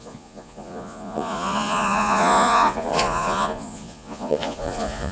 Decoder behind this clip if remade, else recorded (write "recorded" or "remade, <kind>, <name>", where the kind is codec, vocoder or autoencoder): remade, vocoder, Vocos